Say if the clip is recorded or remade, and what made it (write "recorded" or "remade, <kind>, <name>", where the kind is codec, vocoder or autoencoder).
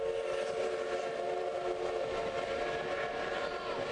recorded